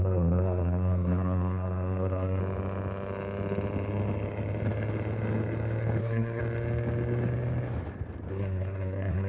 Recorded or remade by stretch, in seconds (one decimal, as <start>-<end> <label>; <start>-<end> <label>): 0.0-2.4 remade; 2.4-6.0 recorded; 6.0-6.4 remade; 6.4-8.3 recorded; 8.3-9.3 remade